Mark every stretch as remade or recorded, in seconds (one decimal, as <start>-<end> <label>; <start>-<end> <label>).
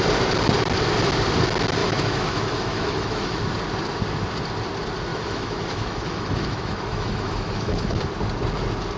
0.0-1.8 recorded; 1.8-3.4 remade; 3.4-5.1 recorded; 5.1-8.0 remade; 8.0-9.0 recorded